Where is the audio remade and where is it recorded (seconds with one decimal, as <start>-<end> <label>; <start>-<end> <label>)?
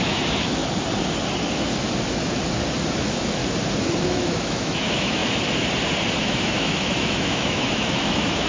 0.0-0.6 remade; 0.6-2.9 recorded; 2.9-3.4 remade; 3.4-4.0 recorded; 4.0-5.2 remade; 5.2-6.2 recorded; 6.2-8.5 remade